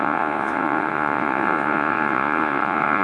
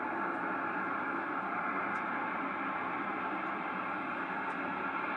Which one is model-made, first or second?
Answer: first